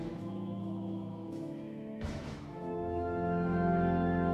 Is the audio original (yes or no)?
no